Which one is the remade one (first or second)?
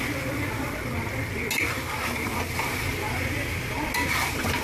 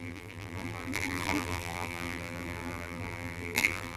second